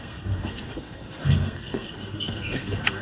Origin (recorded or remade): remade